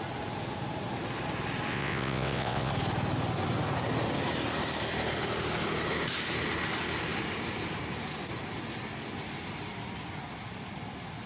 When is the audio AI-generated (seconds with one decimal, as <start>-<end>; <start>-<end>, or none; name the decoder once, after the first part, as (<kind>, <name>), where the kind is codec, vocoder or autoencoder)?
1.7-2.7 (vocoder, WaveNeXt)